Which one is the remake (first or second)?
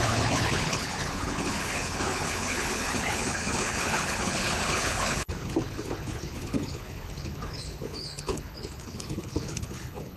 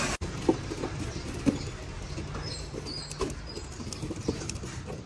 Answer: first